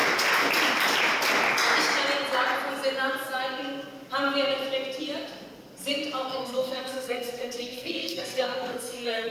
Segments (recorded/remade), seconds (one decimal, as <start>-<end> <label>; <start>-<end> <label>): 0.0-6.4 recorded; 6.4-9.3 remade